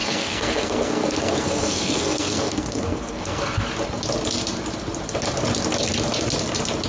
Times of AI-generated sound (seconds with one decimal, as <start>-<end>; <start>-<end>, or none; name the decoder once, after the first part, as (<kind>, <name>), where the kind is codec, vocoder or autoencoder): 0.0-3.7 (codec, SNAC)